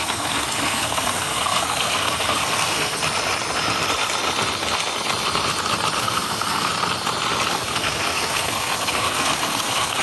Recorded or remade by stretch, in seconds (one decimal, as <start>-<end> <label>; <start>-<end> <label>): 0.0-3.0 remade; 3.0-6.0 recorded; 6.0-6.7 remade; 6.7-7.5 recorded; 7.5-10.0 remade